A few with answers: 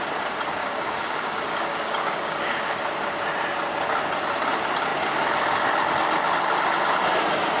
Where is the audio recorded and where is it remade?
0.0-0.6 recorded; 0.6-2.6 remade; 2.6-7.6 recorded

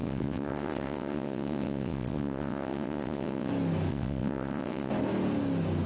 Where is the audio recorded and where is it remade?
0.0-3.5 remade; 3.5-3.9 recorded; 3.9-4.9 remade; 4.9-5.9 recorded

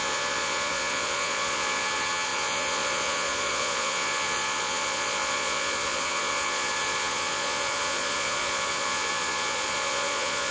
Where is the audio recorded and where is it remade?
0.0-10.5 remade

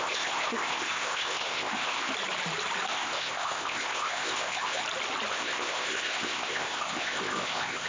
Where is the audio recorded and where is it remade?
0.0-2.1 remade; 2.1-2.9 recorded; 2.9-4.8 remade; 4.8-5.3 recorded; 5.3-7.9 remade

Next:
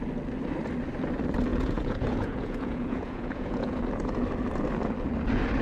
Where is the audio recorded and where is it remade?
0.0-1.5 recorded; 1.5-3.8 remade; 3.8-5.6 recorded

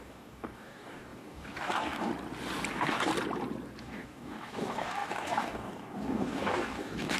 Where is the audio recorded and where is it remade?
0.0-2.1 remade; 2.1-2.7 recorded; 2.7-3.1 remade; 3.1-3.8 recorded; 3.8-7.2 remade

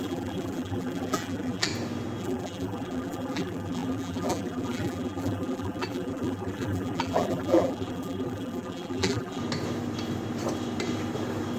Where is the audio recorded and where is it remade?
0.0-1.7 remade; 1.7-2.2 recorded; 2.2-9.4 remade; 9.4-11.6 recorded

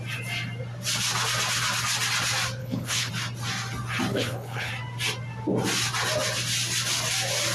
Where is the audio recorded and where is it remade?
0.0-2.6 recorded; 2.6-3.1 remade; 3.1-4.1 recorded; 4.1-4.7 remade; 4.7-7.5 recorded